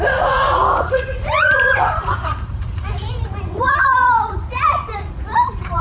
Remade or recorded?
remade